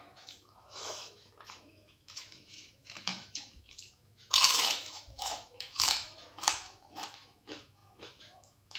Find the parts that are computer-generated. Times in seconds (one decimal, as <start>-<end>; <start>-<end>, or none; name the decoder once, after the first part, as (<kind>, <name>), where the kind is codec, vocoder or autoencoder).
0.0-8.8 (autoencoder, DAC-VAE)